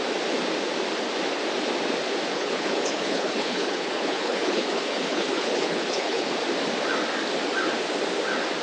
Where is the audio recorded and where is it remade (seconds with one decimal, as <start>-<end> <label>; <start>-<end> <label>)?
0.0-2.3 recorded; 2.3-6.3 remade; 6.3-8.6 recorded